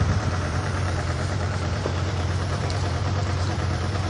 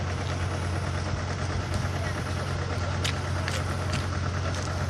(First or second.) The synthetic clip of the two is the first